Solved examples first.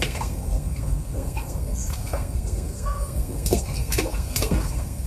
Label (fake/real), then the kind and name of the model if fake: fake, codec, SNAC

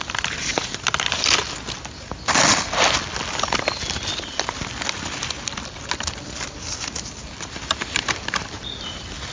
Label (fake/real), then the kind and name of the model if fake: real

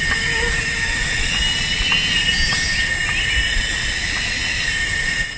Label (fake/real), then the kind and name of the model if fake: real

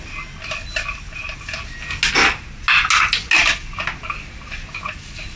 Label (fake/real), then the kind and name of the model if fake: real